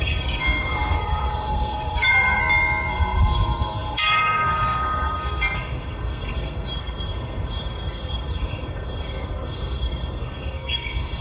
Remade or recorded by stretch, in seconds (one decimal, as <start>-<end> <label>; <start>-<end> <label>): 0.0-2.4 remade; 2.4-2.9 recorded; 2.9-11.2 remade

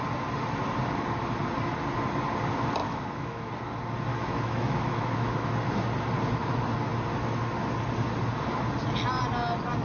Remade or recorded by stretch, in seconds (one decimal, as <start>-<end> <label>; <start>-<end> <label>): 0.0-2.8 recorded; 2.8-3.5 remade; 3.5-4.1 recorded; 4.1-5.5 remade; 5.5-9.8 recorded

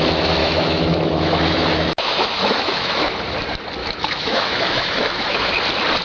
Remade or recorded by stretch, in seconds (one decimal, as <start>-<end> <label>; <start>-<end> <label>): 0.0-0.4 recorded; 0.4-3.2 remade; 3.2-3.8 recorded; 3.8-5.5 remade; 5.5-6.0 recorded

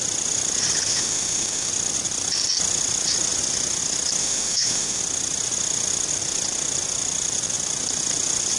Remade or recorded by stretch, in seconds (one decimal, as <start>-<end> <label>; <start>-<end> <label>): 0.0-0.9 recorded; 0.9-1.7 remade; 1.7-4.2 recorded; 4.2-5.0 remade; 5.0-8.6 recorded